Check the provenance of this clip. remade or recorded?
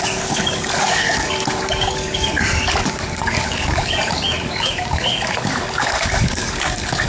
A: remade